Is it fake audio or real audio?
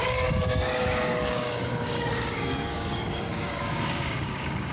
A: fake